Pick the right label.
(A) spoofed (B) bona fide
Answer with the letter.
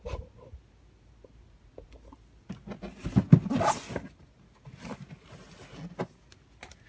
B